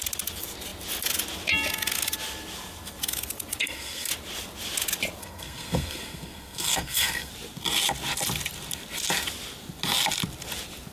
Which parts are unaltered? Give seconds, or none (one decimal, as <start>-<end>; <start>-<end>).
0.0-3.6; 4.1-5.2; 7.3-10.9